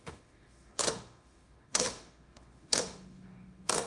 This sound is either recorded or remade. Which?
remade